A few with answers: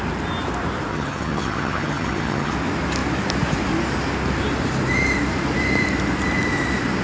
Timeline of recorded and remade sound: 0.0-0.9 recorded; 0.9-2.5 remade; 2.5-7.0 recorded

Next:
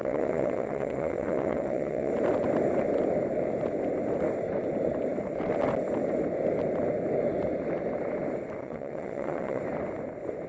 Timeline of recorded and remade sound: 0.0-2.1 remade; 2.1-8.6 recorded; 8.6-9.6 remade; 9.6-10.5 recorded

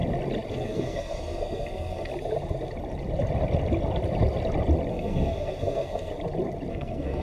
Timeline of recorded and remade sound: 0.0-0.5 recorded; 0.5-2.1 remade; 2.1-4.9 recorded; 4.9-6.1 remade; 6.1-6.7 recorded; 6.7-7.2 remade

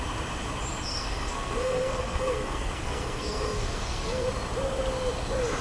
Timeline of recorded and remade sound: 0.0-0.9 recorded; 0.9-4.3 remade; 4.3-5.6 recorded

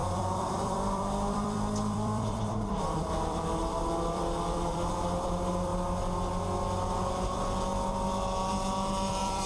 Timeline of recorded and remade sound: 0.0-5.7 remade; 5.7-9.1 recorded; 9.1-9.5 remade

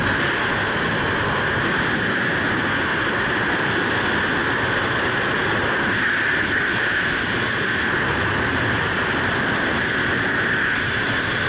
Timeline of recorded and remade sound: 0.0-11.5 recorded